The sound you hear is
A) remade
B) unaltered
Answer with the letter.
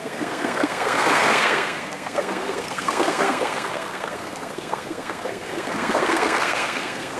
A